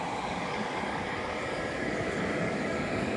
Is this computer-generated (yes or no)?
yes